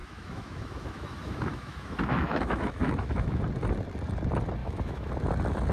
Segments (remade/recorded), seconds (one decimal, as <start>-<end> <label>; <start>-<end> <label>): 0.0-3.4 remade; 3.4-4.6 recorded; 4.6-5.1 remade; 5.1-5.7 recorded